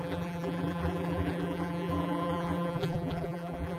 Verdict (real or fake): fake